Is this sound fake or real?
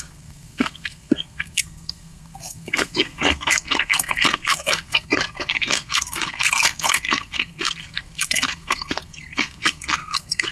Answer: fake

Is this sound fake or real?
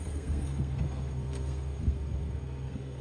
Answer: fake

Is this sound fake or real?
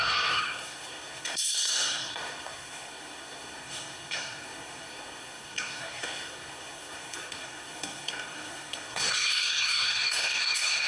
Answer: fake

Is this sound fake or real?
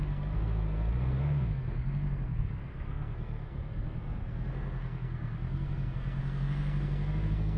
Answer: fake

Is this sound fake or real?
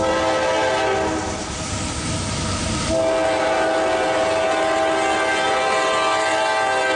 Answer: real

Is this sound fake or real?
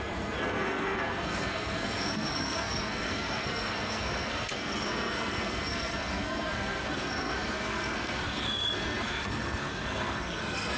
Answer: fake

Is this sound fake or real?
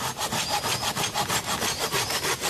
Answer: real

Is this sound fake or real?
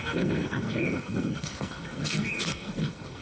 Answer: fake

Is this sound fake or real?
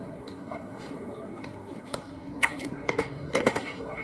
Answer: fake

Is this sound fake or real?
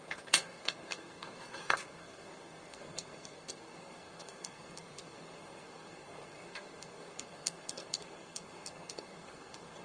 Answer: fake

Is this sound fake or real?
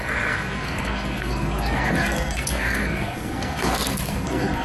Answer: fake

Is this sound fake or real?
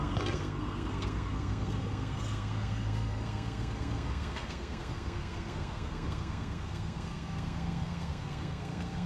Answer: fake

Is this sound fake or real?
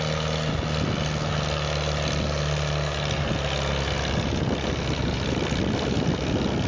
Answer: real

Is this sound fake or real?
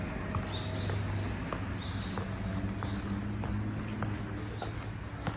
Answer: real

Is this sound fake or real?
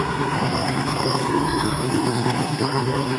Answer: fake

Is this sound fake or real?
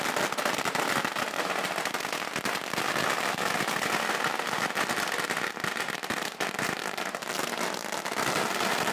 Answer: real